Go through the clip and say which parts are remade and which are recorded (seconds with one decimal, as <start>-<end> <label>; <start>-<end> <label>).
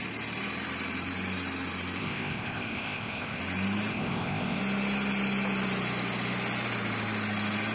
0.0-2.0 recorded; 2.0-3.4 remade; 3.4-3.9 recorded; 3.9-4.6 remade; 4.6-7.7 recorded